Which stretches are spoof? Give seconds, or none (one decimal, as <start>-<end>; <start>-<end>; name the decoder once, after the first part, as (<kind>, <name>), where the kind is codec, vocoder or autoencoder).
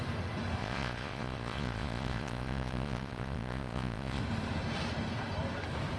0.6-4.2 (vocoder, Vocos)